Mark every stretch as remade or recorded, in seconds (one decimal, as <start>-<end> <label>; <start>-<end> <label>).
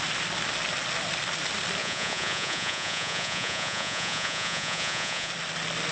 0.0-1.8 recorded; 1.8-5.3 remade; 5.3-5.9 recorded